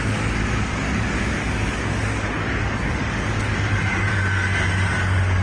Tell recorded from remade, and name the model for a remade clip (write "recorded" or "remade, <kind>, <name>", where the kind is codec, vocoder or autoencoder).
remade, codec, DAC